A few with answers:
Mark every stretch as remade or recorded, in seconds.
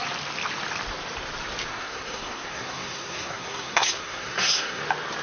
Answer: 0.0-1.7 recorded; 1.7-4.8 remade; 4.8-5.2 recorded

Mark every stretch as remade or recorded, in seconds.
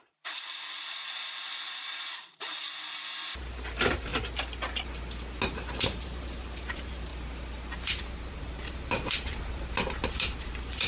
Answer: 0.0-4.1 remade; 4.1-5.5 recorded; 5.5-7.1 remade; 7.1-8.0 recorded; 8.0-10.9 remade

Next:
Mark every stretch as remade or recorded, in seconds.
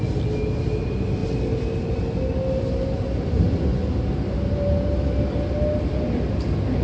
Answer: 0.0-6.8 recorded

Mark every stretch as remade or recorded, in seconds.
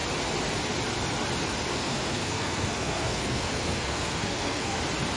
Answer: 0.0-1.7 recorded; 1.7-4.8 remade; 4.8-5.2 recorded